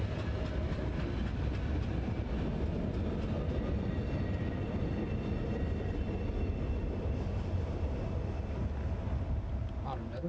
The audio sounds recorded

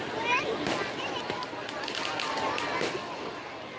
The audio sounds recorded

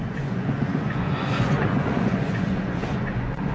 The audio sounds remade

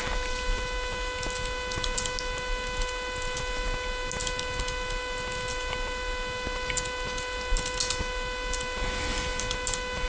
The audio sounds recorded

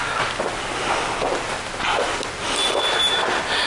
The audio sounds recorded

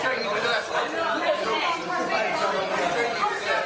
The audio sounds recorded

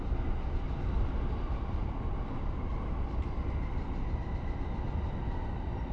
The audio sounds recorded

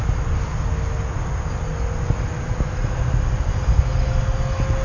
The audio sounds recorded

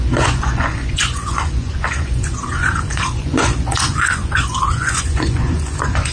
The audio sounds remade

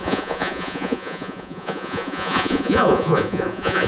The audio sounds remade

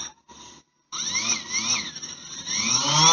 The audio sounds recorded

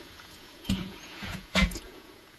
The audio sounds remade